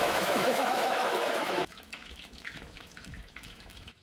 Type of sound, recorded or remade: remade